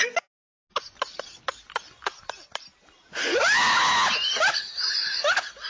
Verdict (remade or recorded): recorded